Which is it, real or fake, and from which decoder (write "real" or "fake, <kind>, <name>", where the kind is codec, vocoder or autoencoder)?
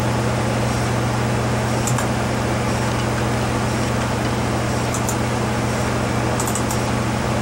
real